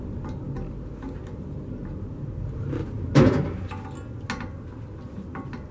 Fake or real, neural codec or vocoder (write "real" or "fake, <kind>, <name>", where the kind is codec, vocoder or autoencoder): real